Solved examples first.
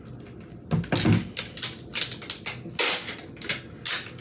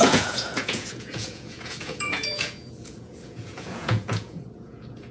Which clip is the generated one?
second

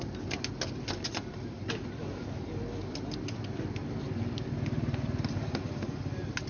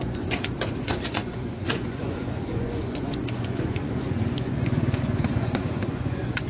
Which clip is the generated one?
second